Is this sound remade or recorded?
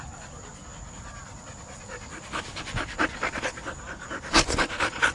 recorded